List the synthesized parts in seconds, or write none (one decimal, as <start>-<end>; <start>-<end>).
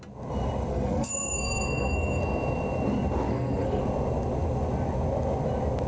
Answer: 0.7-2.2; 3.3-3.8